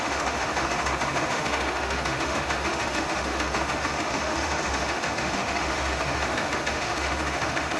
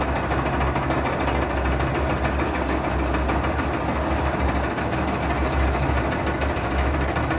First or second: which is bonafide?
second